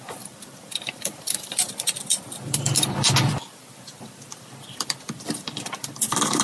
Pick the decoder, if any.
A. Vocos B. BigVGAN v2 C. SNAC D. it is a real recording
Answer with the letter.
B